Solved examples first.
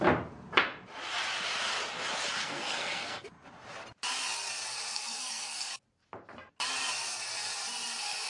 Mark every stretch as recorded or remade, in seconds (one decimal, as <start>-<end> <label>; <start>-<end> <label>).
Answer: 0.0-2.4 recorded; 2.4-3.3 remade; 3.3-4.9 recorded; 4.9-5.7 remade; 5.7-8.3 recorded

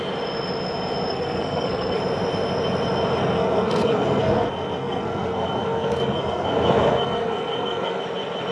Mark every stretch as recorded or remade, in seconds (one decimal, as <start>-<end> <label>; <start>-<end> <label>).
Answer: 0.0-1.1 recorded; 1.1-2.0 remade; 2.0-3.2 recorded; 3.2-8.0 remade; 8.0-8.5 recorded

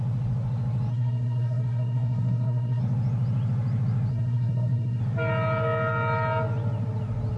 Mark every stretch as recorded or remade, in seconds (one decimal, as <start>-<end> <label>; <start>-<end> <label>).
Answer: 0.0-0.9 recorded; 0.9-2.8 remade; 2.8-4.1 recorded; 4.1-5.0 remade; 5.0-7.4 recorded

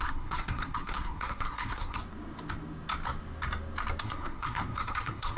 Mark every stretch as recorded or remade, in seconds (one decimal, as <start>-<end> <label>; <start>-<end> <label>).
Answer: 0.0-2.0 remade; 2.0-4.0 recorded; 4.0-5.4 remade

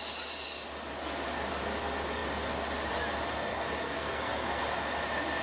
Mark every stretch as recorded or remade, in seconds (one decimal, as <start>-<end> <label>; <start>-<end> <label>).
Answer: 0.0-3.5 recorded; 3.5-4.6 remade; 4.6-5.4 recorded

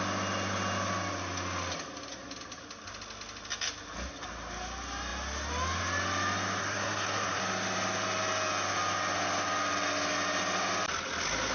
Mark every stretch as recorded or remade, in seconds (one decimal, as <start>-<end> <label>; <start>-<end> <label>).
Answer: 0.0-6.6 recorded; 6.6-7.4 remade; 7.4-11.5 recorded

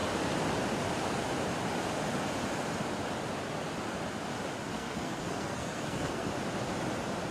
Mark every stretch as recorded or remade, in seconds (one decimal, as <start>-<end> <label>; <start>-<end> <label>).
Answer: 0.0-4.7 recorded; 4.7-6.3 remade; 6.3-7.3 recorded

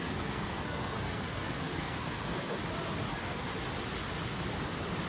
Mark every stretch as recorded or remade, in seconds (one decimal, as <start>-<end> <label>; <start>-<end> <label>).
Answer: 0.0-2.6 remade; 2.6-3.1 recorded; 3.1-3.5 remade; 3.5-5.1 recorded